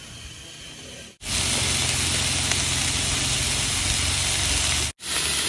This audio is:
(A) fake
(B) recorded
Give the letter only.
B